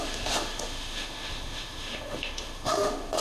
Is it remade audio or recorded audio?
remade